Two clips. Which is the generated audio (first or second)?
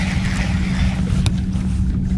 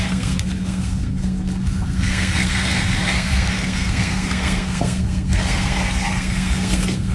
second